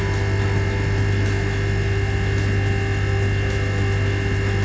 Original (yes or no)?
yes